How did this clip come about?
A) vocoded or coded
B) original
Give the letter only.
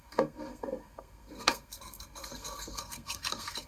A